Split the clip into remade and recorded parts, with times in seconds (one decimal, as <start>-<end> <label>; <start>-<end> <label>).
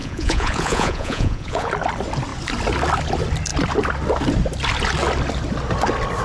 0.0-1.7 remade; 1.7-6.2 recorded